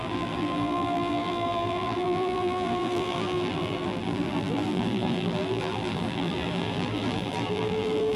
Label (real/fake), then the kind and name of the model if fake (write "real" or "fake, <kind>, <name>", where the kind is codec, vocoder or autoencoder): fake, vocoder, BigVGAN v2